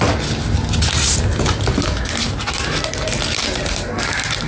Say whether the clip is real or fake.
real